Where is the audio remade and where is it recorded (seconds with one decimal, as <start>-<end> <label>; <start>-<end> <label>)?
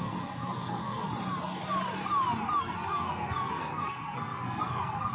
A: 0.0-1.0 remade; 1.0-2.6 recorded; 2.6-5.1 remade